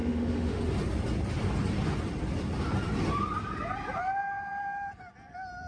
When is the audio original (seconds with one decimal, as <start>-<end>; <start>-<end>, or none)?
0.6-5.7